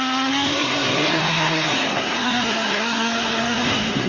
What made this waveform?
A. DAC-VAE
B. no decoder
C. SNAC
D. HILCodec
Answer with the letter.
C